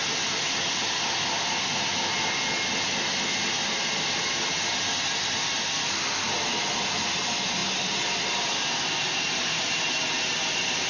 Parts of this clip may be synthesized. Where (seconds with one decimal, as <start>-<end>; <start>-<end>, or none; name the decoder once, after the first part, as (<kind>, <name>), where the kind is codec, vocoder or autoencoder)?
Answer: none